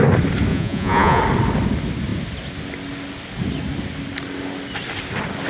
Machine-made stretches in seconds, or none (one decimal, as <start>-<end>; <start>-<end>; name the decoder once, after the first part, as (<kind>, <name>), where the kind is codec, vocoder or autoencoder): 0.5-1.2 (vocoder, Vocos)